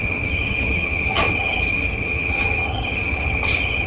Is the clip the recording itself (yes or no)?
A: no